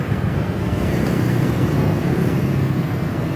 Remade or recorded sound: remade